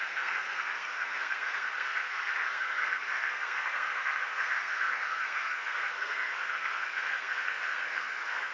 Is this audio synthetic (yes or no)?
yes